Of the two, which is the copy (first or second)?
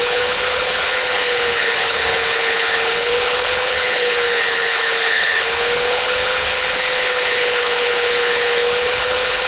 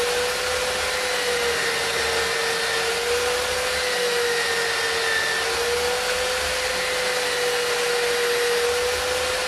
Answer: first